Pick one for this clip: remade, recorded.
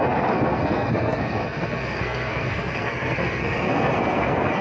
remade